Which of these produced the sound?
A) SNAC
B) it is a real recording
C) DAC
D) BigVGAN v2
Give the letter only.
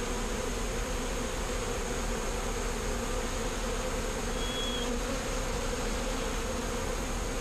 B